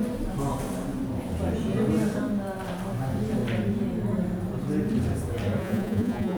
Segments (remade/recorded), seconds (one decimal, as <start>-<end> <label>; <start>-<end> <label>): 0.0-5.6 recorded; 5.6-6.4 remade